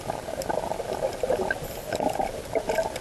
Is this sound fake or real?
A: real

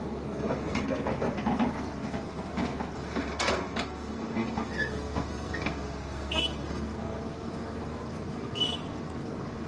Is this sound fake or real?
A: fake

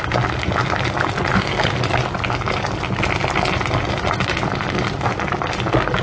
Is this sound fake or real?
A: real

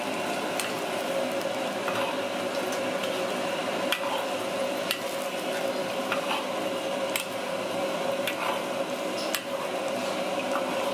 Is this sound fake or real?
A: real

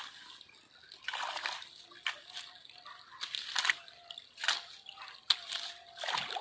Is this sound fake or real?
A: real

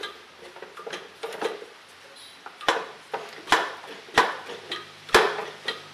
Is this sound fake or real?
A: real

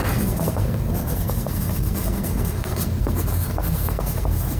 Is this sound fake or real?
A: fake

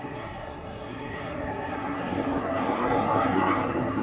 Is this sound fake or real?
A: fake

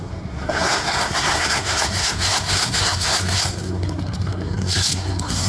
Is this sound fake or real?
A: fake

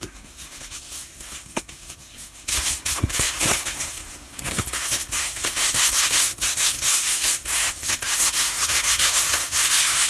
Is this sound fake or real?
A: fake